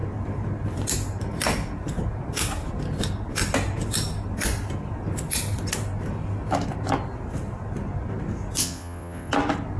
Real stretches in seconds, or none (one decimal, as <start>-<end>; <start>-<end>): 0.0-8.6; 9.3-9.8